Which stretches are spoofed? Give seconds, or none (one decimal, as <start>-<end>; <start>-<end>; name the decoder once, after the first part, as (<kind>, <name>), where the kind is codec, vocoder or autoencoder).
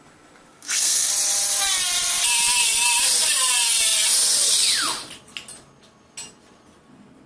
0.5-1.1 (codec, SNAC)